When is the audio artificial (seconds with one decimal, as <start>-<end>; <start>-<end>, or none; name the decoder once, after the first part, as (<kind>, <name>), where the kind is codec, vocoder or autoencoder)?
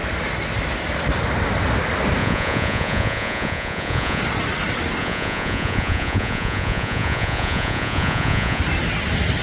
2.2-4.2 (vocoder, Vocos); 5.0-8.6